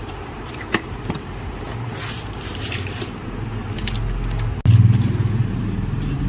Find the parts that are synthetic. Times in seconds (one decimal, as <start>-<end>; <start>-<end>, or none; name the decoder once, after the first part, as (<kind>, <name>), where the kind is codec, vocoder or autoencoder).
0.0-3.5 (vocoder, BigVGAN v2); 5.6-6.3

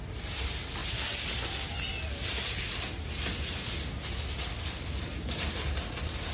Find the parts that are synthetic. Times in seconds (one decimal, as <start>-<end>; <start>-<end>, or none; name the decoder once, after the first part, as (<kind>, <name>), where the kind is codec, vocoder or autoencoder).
5.1-5.7 (vocoder, BigVGAN v2)

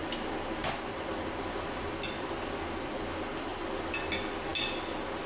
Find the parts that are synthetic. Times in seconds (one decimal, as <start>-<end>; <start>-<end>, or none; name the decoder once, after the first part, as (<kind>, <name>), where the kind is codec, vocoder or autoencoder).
0.6-1.9 (vocoder, BigVGAN v2)